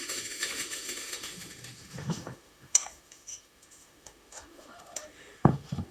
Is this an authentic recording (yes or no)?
no